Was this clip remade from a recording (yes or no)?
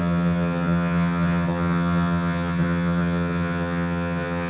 yes